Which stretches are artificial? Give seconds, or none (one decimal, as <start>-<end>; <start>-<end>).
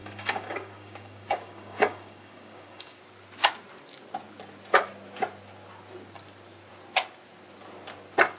0.0-3.0